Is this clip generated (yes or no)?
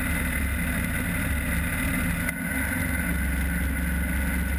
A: no